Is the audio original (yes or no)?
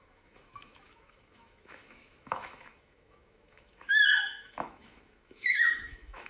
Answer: no